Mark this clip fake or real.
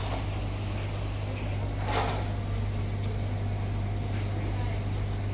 real